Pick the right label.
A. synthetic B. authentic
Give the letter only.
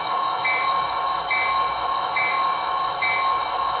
A